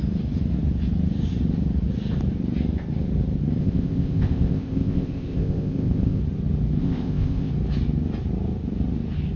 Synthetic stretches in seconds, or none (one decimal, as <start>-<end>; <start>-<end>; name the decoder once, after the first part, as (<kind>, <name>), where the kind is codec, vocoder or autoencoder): 3.6-6.2 (codec, ZipCodec); 6.8-7.5